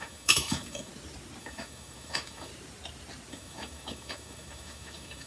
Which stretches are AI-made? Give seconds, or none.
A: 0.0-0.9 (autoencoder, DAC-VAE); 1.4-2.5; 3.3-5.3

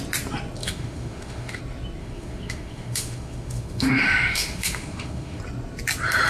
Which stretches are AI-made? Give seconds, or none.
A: 0.6-1.6 (autoencoder, DAC-VAE); 2.0-5.4

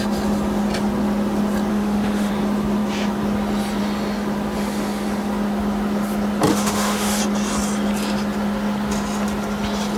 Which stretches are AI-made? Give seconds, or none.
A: 1.7-2.3 (autoencoder, DAC-VAE); 6.5-7.2

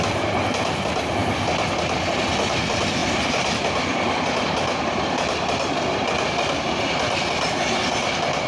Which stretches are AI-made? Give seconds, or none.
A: none

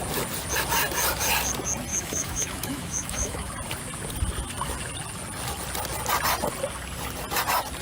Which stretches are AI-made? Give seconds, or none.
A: 1.9-3.5 (autoencoder, DAC-VAE)

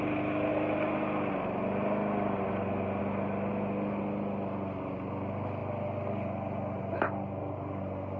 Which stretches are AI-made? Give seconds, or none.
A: none

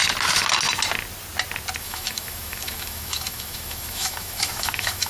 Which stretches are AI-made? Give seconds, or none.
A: 1.8-5.1 (autoencoder, DAC-VAE)